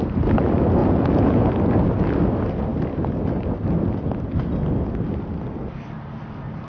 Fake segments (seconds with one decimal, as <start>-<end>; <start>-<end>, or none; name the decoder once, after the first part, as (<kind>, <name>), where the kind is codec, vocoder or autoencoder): 0.8-1.4 (vocoder, Vocos)